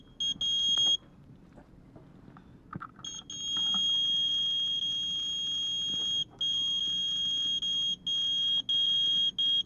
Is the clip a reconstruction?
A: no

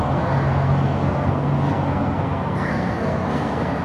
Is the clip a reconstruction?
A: yes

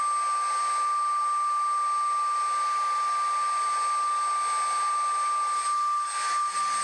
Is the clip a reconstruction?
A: no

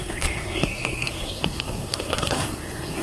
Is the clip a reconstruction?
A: yes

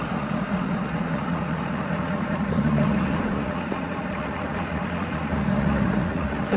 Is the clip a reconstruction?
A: yes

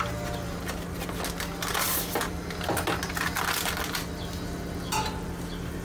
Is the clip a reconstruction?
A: no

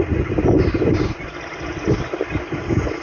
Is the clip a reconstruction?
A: no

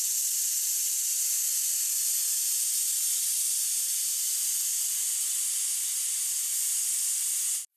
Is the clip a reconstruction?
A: no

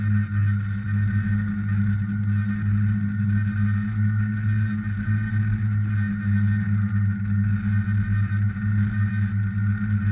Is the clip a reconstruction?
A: no